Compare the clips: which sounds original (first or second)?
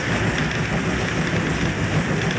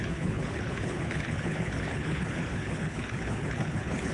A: first